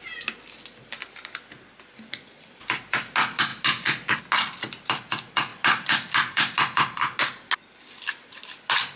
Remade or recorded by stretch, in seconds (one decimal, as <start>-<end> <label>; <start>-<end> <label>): 0.0-9.0 recorded